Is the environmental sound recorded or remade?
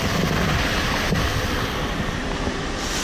recorded